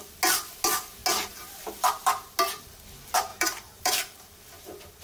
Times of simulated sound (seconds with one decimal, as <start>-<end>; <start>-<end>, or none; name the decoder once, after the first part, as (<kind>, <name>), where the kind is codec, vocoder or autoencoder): 3.3-4.5 (vocoder, BigVGAN v2)